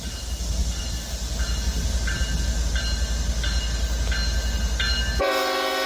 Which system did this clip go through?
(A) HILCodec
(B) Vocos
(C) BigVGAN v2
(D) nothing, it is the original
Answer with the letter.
D